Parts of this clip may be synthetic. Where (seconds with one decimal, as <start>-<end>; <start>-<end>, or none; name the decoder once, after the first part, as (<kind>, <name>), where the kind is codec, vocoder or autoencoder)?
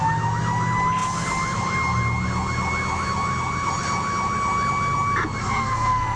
5.4-6.2 (codec, SNAC)